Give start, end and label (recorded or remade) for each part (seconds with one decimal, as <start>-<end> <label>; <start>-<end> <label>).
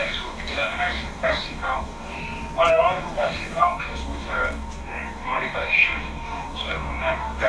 0.0-2.2 remade; 2.2-2.7 recorded; 2.7-7.5 remade